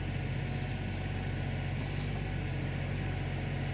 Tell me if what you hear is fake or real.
real